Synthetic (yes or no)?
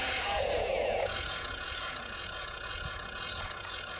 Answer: yes